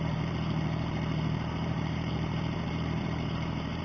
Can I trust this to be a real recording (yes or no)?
no